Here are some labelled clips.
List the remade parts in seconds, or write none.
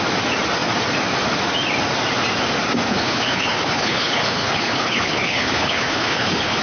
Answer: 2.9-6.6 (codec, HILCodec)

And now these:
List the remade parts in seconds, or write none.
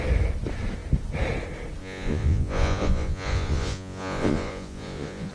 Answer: 1.8-5.3 (vocoder, Vocos)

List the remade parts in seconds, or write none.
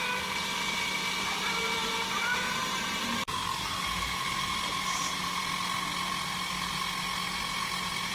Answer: 0.0-5.4 (vocoder, BigVGAN v2)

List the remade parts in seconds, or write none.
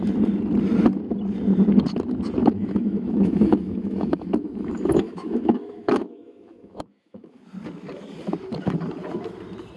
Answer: 2.4-7.4 (autoencoder, DAC-VAE)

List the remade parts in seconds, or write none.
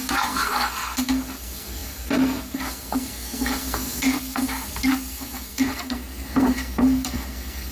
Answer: 0.0-7.7 (codec, SNAC)